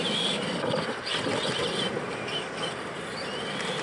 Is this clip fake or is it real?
real